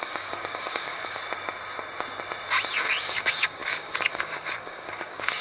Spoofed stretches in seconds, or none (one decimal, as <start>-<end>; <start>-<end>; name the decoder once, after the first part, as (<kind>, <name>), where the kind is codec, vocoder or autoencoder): 0.0-1.2 (codec, DAC); 3.0-5.4